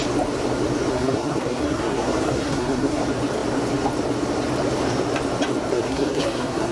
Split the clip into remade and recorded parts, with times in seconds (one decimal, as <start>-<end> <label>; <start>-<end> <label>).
0.0-0.9 recorded; 0.9-3.0 remade; 3.0-5.7 recorded; 5.7-6.7 remade